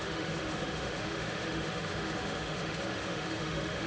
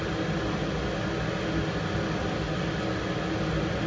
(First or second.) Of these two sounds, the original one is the second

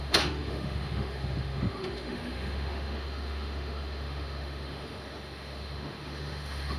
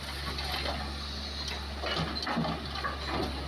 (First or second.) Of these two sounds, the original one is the second